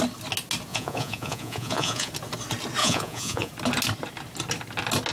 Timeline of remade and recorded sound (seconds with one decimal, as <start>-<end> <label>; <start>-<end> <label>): 0.0-0.7 recorded; 0.7-2.1 remade; 2.1-2.8 recorded; 2.8-3.5 remade; 3.5-5.1 recorded